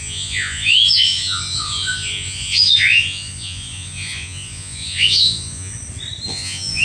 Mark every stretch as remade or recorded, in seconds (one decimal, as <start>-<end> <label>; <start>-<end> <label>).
0.0-5.7 remade; 5.7-6.3 recorded; 6.3-6.8 remade